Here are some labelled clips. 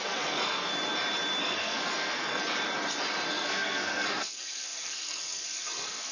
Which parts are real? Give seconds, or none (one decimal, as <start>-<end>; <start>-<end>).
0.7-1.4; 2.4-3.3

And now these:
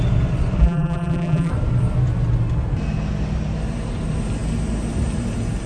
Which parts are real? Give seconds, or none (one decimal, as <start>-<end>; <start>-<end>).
0.0-0.6; 1.5-5.7

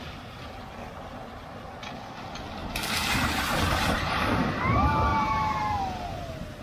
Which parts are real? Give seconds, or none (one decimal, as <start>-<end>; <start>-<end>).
0.0-2.6; 4.2-5.1; 5.8-6.6